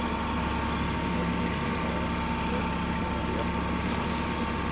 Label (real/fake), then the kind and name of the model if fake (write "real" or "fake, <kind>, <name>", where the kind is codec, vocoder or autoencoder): real